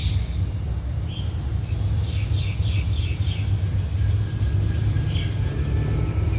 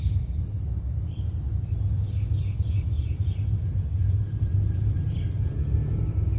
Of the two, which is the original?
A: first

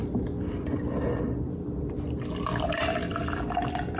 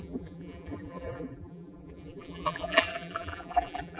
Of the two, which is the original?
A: first